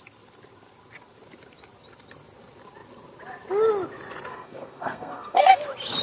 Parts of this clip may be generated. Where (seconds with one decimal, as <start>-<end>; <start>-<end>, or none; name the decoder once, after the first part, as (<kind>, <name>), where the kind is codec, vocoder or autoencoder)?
4.3-5.6 (codec, SNAC)